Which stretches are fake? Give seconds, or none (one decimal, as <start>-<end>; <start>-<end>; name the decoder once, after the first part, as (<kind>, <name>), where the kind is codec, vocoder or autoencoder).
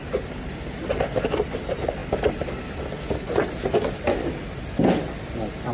none